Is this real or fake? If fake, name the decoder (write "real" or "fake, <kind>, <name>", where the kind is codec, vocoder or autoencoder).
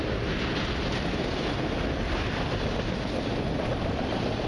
real